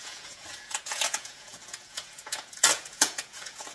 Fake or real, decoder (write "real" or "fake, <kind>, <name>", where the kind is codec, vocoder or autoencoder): fake, vocoder, Vocos